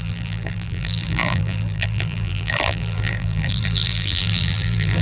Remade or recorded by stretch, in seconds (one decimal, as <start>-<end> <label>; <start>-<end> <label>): 0.0-5.0 remade